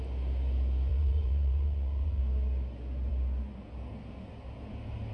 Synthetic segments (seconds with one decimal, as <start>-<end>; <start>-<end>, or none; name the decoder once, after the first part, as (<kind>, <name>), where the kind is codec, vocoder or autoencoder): 0.9-2.2 (vocoder, Vocos)